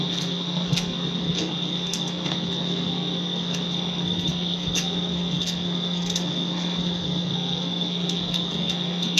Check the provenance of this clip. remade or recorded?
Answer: remade